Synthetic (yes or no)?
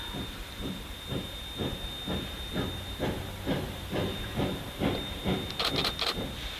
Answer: no